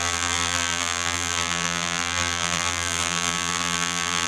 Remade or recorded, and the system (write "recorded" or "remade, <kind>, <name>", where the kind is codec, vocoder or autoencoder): remade, vocoder, BigVGAN v2